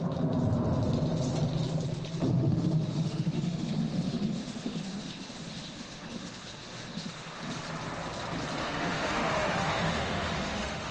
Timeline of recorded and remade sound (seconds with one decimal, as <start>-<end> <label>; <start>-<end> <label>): 0.0-2.2 recorded; 2.2-7.4 remade; 7.4-8.6 recorded; 8.6-10.9 remade